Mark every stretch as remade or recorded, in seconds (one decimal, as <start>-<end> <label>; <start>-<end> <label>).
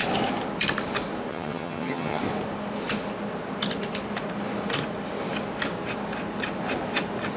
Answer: 0.0-1.3 recorded; 1.3-2.2 remade; 2.2-7.4 recorded